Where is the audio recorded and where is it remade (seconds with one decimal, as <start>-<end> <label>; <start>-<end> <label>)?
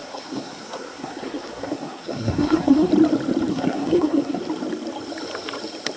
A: 0.0-2.9 remade; 2.9-3.5 recorded; 3.5-4.4 remade; 4.4-6.0 recorded